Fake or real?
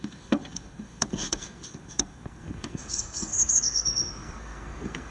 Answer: fake